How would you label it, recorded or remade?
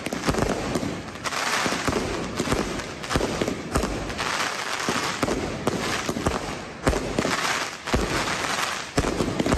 recorded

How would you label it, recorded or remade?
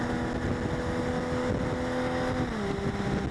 recorded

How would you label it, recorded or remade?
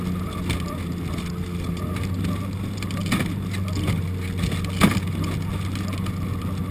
recorded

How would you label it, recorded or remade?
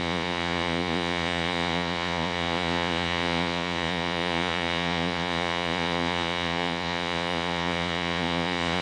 remade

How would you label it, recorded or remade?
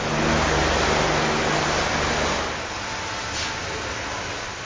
recorded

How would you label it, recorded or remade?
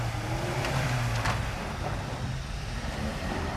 remade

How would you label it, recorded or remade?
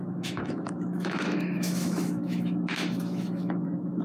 remade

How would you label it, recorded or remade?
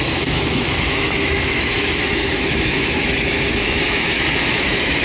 remade